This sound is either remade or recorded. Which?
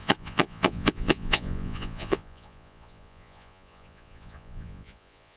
remade